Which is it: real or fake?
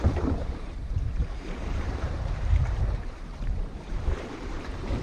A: fake